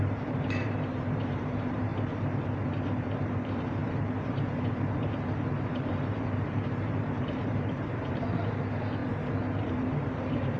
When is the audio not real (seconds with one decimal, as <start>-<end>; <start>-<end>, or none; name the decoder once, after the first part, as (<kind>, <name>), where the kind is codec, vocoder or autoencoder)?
0.0-1.9 (vocoder, BigVGAN v2); 3.0-9.0; 9.6-10.6